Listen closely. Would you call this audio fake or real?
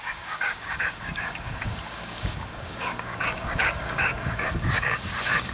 fake